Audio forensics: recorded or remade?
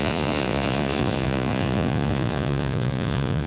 remade